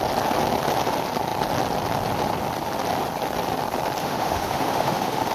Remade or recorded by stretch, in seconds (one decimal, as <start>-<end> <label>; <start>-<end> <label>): 0.0-4.0 recorded; 4.0-5.3 remade